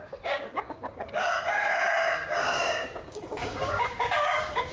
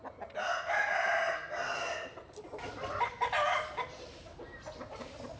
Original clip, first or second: second